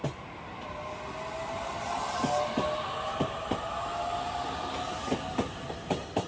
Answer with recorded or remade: recorded